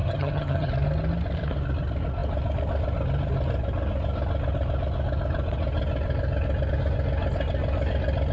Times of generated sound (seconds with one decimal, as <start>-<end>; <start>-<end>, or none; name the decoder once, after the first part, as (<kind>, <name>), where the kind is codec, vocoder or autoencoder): 0.0-0.7 (vocoder, HiFi-GAN)

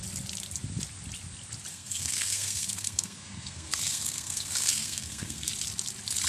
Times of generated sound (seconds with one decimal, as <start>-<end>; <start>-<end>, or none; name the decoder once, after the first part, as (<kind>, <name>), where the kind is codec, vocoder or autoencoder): 1.7-5.5 (codec, SNAC)

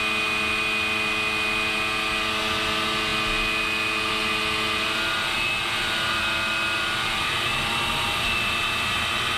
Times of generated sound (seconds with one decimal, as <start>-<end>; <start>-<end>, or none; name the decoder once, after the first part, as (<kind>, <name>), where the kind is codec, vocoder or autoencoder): none